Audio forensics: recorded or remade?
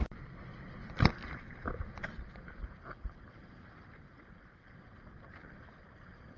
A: recorded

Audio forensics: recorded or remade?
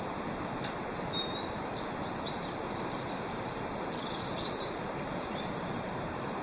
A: remade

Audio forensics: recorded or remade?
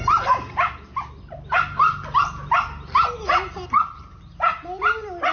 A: recorded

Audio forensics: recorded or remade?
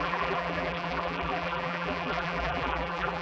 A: remade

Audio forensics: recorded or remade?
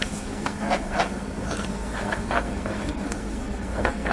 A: remade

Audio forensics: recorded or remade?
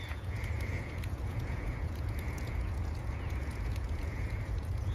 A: remade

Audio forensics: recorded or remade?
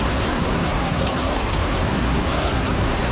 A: remade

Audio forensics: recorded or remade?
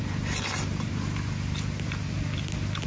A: recorded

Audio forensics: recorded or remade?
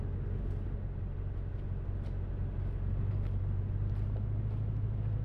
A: recorded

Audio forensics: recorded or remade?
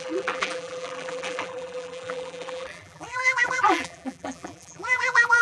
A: remade